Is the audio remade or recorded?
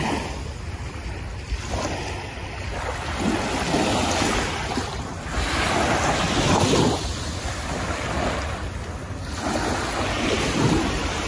recorded